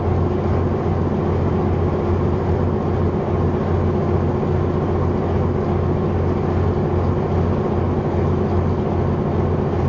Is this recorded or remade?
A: recorded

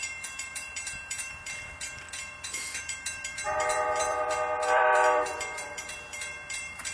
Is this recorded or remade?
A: remade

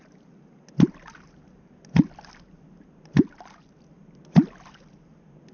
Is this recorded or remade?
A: recorded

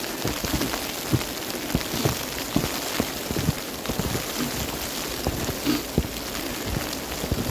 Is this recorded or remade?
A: recorded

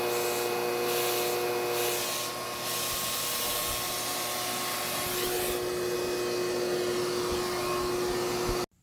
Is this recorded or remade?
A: recorded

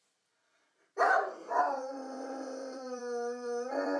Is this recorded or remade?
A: remade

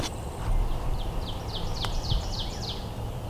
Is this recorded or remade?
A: remade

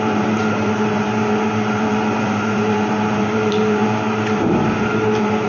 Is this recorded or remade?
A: remade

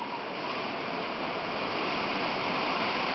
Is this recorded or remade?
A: recorded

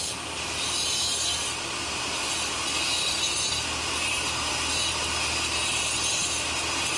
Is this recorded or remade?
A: recorded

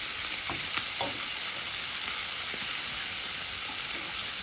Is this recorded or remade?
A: remade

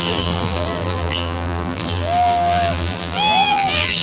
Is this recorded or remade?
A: remade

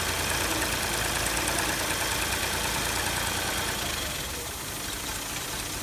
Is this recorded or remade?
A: recorded